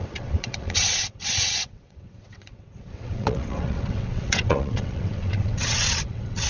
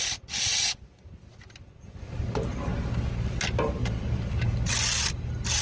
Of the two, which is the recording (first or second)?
second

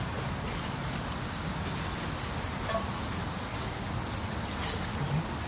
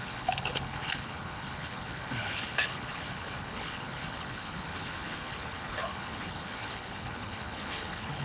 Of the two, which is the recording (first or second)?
first